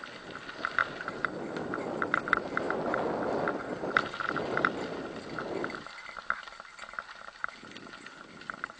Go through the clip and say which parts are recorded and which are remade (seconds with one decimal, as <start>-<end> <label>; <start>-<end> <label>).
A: 0.0-8.8 recorded